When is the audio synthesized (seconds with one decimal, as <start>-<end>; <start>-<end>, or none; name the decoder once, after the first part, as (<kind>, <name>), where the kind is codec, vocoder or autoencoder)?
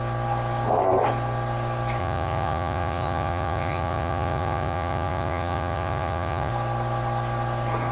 2.0-6.5 (vocoder, Vocos)